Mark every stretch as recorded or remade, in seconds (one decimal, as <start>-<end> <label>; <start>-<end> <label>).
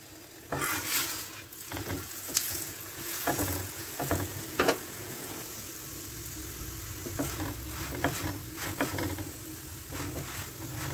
0.0-1.0 recorded; 1.0-5.7 remade; 5.7-10.9 recorded